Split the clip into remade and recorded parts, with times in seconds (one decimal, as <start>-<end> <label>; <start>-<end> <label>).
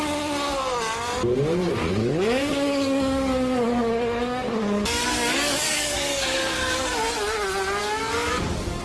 0.0-2.0 recorded; 2.0-7.1 remade; 7.1-7.8 recorded; 7.8-8.8 remade